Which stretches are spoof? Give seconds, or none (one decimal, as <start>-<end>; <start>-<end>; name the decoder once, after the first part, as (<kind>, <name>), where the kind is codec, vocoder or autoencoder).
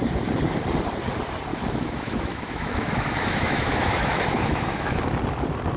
1.5-5.0 (autoencoder, DAC-VAE)